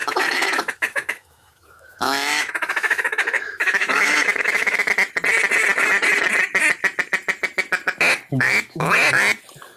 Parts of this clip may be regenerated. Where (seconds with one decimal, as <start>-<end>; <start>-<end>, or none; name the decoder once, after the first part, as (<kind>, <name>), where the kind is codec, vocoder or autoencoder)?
0.0-4.9 (autoencoder, DAC-VAE); 8.3-8.9